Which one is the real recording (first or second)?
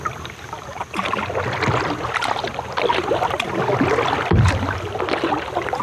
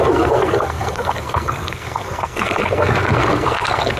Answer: first